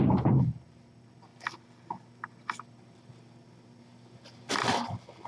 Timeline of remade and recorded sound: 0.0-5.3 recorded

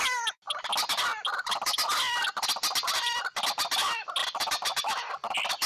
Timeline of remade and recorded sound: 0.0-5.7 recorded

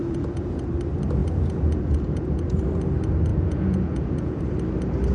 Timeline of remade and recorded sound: 0.0-0.7 remade; 0.7-1.2 recorded; 1.2-2.6 remade; 2.6-3.3 recorded; 3.3-4.4 remade; 4.4-5.1 recorded